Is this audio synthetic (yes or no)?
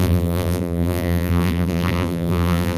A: yes